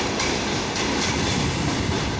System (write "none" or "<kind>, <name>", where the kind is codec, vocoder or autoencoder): vocoder, BigVGAN v2